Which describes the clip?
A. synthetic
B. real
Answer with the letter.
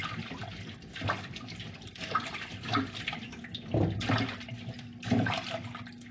B